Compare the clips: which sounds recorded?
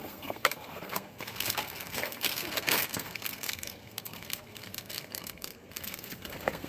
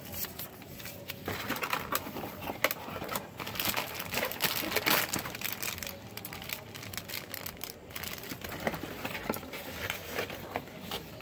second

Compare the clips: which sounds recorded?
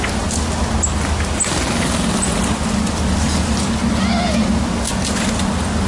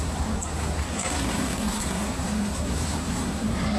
first